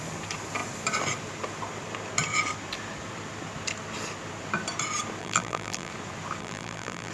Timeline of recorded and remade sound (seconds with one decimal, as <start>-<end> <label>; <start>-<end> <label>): 0.0-5.2 recorded; 5.2-5.9 remade; 5.9-6.4 recorded; 6.4-7.1 remade

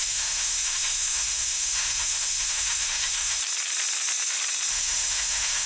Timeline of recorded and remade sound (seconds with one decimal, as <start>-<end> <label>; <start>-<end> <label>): 0.0-3.4 remade; 3.4-4.7 recorded; 4.7-5.7 remade